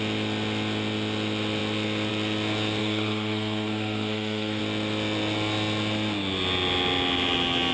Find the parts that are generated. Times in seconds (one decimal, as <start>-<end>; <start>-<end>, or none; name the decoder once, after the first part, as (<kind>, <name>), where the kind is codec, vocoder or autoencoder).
2.8-4.6 (codec, SNAC)